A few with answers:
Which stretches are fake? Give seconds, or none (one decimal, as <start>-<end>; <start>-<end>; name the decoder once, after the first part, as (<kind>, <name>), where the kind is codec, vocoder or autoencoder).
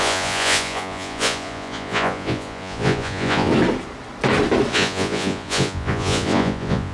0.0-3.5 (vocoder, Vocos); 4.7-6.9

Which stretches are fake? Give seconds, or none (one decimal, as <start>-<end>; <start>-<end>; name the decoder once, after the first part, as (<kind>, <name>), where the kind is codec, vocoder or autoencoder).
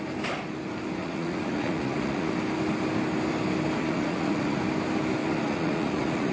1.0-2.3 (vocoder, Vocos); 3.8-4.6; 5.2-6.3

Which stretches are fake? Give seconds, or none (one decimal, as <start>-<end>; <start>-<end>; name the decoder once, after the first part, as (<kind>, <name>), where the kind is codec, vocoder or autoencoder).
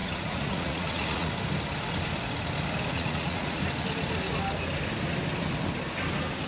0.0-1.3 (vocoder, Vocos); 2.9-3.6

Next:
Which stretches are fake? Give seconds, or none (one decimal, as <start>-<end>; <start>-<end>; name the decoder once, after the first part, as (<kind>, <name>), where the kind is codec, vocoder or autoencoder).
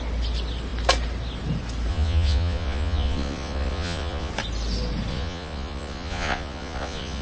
1.9-4.3 (vocoder, Vocos); 5.1-7.2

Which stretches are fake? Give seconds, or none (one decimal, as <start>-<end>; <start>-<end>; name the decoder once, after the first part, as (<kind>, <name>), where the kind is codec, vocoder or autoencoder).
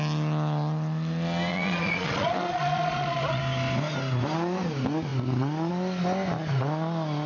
1.5-3.4 (vocoder, Vocos)